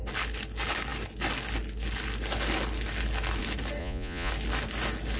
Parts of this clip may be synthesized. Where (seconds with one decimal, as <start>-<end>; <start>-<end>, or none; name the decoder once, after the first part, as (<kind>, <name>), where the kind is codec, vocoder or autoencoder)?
3.8-4.3 (vocoder, Vocos)